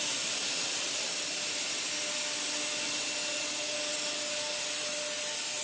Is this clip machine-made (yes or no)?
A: no